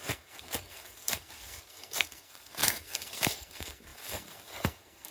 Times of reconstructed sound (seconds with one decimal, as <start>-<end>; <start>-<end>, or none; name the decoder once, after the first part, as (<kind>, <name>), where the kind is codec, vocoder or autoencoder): 0.0-5.1 (codec, SNAC)